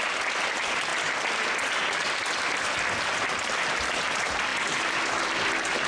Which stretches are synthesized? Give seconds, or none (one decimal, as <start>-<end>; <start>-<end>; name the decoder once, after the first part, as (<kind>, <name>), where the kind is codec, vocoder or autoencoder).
none